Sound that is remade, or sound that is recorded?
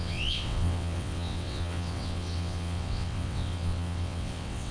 remade